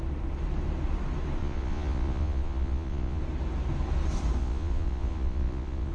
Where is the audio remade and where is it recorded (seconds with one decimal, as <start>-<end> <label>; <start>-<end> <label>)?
0.0-1.4 recorded; 1.4-3.2 remade; 3.2-4.4 recorded; 4.4-5.9 remade